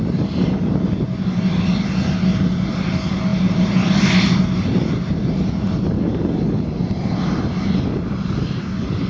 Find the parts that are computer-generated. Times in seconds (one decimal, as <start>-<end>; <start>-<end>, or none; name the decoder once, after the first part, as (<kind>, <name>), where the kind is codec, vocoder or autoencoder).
none